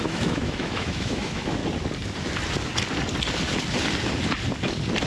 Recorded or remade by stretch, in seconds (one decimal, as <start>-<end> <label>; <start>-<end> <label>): 0.0-1.6 remade; 1.6-5.1 recorded